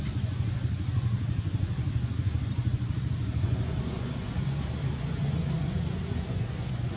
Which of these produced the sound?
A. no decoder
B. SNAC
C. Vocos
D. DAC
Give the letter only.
C